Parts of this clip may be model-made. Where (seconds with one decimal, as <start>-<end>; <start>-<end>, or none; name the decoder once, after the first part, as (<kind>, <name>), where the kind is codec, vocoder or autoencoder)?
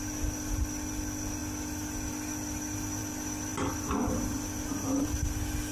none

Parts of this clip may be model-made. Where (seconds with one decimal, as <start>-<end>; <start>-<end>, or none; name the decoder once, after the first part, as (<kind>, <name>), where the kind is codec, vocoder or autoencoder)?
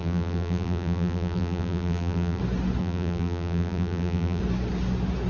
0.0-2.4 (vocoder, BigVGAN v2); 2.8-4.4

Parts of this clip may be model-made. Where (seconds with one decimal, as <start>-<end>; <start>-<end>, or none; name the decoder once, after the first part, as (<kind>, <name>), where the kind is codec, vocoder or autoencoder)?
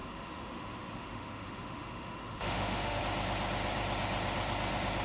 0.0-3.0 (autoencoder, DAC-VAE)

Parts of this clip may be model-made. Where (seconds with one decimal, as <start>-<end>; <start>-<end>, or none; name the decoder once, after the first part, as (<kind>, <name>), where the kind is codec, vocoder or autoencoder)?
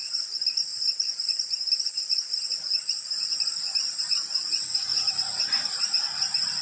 none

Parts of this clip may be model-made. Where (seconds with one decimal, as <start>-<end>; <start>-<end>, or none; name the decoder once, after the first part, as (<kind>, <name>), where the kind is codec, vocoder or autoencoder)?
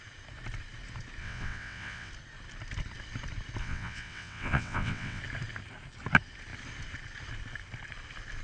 1.2-2.1 (vocoder, WaveNeXt); 3.6-5.2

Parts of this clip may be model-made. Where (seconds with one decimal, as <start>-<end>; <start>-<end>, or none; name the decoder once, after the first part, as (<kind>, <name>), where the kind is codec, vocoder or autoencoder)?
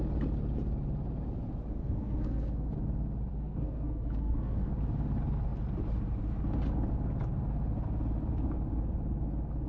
1.8-2.7 (codec, SNAC); 3.3-4.7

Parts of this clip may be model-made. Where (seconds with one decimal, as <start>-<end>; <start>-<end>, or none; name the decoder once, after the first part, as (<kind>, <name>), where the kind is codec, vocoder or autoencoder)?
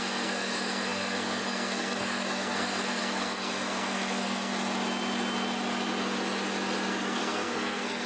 0.0-4.5 (codec, SNAC); 6.9-8.1